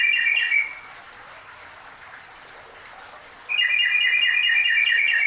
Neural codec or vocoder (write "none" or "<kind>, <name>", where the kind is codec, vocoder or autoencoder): none